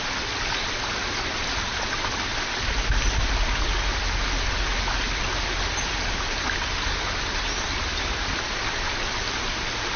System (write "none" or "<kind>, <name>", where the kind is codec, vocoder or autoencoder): none